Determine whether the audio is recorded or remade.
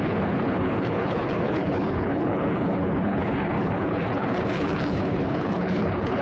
remade